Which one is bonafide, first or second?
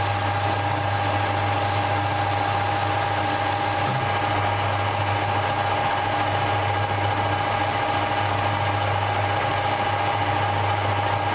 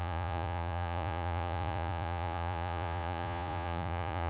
first